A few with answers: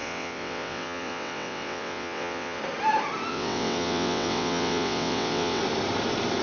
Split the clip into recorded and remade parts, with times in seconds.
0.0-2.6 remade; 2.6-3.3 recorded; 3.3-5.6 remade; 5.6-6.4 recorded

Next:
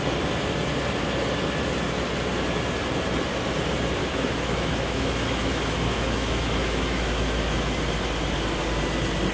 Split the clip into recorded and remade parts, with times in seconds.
0.0-4.0 recorded; 4.0-7.8 remade; 7.8-9.3 recorded

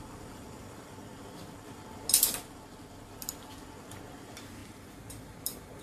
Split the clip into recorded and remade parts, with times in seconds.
0.0-5.8 recorded

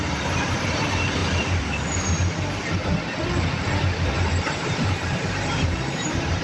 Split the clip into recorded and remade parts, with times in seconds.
0.0-1.2 remade; 1.2-3.8 recorded; 3.8-6.4 remade

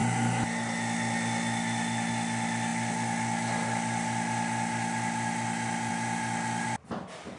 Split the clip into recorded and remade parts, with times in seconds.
0.0-7.4 recorded

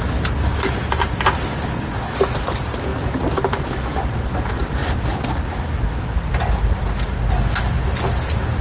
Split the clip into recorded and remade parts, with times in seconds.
0.0-8.6 recorded

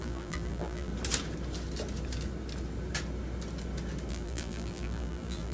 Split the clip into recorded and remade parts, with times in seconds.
0.0-0.9 remade; 0.9-4.1 recorded; 4.1-5.5 remade

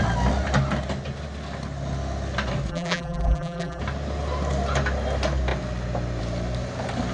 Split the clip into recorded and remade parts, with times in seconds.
0.0-2.7 recorded; 2.7-3.8 remade; 3.8-7.1 recorded